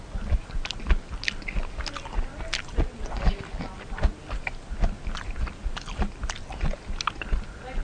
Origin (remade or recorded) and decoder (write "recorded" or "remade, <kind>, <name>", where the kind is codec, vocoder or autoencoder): recorded